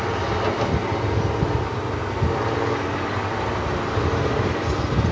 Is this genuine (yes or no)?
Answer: yes